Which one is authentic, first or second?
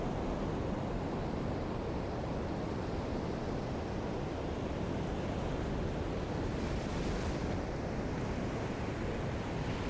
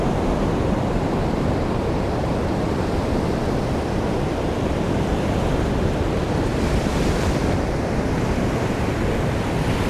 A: first